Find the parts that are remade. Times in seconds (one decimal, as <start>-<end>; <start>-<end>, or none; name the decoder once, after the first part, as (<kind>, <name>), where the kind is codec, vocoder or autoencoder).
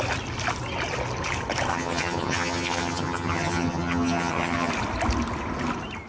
1.7-4.7 (vocoder, HiFi-GAN)